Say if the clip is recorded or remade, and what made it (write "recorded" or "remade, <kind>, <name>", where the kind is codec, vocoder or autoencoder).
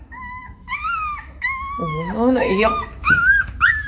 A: remade, autoencoder, DAC-VAE